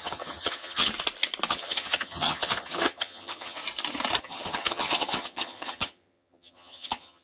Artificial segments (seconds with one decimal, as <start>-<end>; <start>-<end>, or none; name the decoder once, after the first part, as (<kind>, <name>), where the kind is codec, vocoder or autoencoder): 0.0-0.9 (vocoder, HiFi-GAN); 1.5-3.6; 4.2-7.2

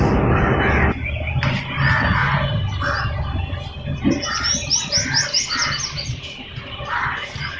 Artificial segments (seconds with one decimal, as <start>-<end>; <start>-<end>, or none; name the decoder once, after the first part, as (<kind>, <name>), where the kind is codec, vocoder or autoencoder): none

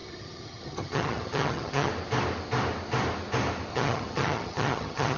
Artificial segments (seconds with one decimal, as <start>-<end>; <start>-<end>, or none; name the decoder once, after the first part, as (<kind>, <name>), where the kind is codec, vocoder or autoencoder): 0.0-1.9 (vocoder, HiFi-GAN); 3.7-5.2

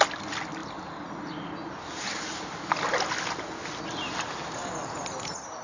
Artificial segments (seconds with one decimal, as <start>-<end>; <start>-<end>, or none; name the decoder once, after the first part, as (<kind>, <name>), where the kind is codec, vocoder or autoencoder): none

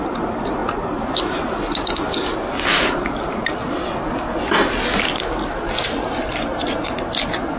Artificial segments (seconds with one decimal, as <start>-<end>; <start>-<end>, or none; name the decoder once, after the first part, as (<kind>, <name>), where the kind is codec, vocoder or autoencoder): none

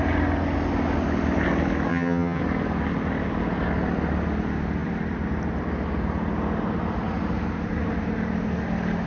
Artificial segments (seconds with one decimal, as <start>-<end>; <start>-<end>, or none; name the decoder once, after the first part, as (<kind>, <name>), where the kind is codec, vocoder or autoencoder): 1.9-2.4 (vocoder, HiFi-GAN)